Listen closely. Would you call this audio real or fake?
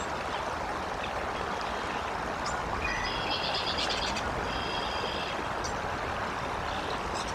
real